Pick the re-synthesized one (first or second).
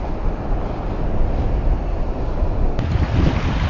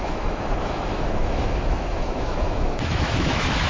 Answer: second